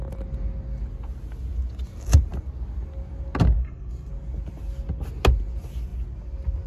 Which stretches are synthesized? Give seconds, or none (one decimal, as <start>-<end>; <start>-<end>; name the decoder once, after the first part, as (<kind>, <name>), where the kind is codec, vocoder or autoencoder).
3.6-4.1 (codec, SNAC)